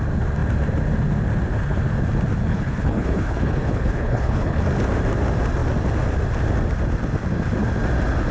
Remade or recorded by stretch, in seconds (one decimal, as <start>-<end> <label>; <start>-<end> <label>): 0.0-2.5 recorded; 2.5-4.6 remade; 4.6-8.3 recorded